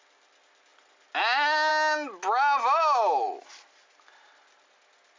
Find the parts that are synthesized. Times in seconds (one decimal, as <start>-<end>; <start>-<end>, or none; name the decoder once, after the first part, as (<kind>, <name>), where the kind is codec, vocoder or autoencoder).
none